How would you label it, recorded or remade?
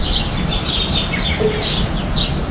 recorded